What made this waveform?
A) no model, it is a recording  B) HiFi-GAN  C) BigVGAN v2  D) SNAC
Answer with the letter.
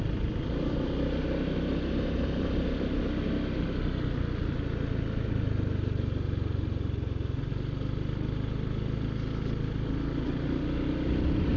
A